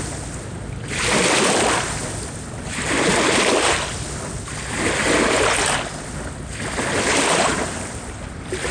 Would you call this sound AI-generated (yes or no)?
no